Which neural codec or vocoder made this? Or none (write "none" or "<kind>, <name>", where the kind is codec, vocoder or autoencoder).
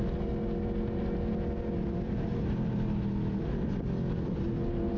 none